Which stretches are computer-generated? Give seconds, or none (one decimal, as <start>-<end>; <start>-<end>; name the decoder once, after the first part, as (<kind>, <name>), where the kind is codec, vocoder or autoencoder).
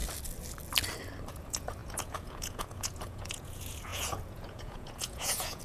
1.3-5.6 (vocoder, Vocos)